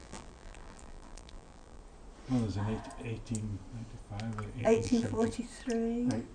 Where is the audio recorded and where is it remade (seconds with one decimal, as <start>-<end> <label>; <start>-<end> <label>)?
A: 0.0-1.8 remade; 1.8-4.6 recorded; 4.6-5.3 remade; 5.3-6.3 recorded